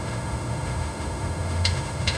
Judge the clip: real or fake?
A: fake